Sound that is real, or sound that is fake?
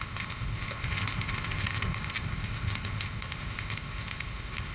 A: fake